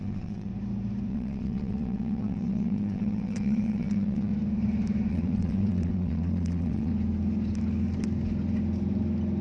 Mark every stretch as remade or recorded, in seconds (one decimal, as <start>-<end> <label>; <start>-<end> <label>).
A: 0.0-0.5 remade; 0.5-1.1 recorded; 1.1-4.3 remade; 4.3-5.1 recorded; 5.1-6.9 remade; 6.9-9.4 recorded